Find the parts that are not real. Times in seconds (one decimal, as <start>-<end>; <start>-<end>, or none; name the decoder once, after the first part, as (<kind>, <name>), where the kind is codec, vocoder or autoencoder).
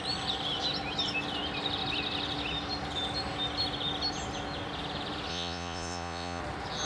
5.3-6.4 (vocoder, Vocos)